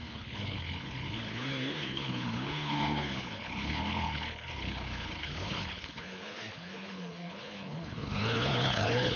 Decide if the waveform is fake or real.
fake